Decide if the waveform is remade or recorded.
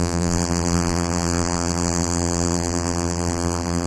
remade